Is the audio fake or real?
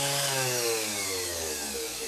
fake